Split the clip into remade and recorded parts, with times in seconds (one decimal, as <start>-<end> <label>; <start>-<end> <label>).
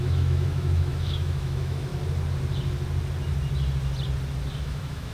0.0-1.9 remade; 1.9-4.6 recorded; 4.6-5.1 remade